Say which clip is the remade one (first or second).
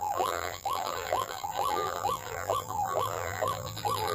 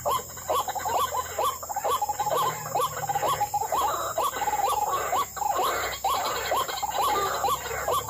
first